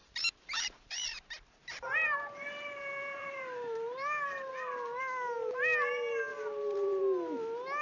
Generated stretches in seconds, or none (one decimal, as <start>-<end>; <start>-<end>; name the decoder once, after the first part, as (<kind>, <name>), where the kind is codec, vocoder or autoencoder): 0.0-4.5 (vocoder, BigVGAN v2); 6.3-7.0